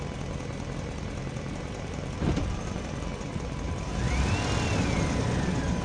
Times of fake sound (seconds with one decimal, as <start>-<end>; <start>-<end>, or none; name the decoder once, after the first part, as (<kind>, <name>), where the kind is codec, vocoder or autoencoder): 0.5-4.0 (vocoder, BigVGAN v2)